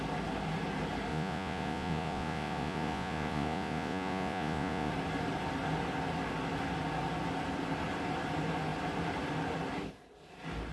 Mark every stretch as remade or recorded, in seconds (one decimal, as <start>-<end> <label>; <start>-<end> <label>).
0.0-1.1 recorded; 1.1-4.9 remade; 4.9-10.7 recorded